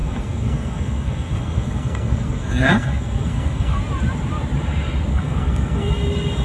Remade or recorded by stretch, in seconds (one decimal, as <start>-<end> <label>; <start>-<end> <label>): 0.0-3.8 remade; 3.8-5.1 recorded; 5.1-5.9 remade; 5.9-6.4 recorded